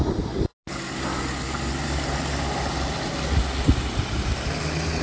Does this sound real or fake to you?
real